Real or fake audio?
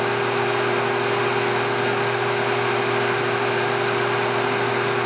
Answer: real